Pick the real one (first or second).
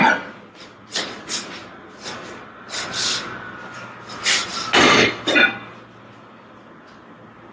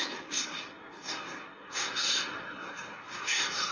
first